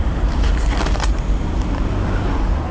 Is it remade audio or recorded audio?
remade